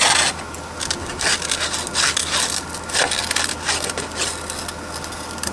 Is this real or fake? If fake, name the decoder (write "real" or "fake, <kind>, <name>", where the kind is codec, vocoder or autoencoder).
real